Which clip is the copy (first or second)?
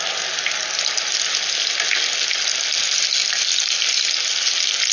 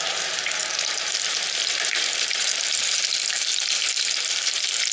second